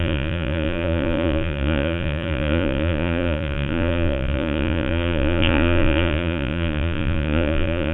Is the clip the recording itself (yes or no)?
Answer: no